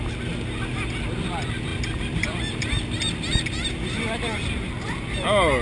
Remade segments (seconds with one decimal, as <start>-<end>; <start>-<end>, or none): 1.7-5.1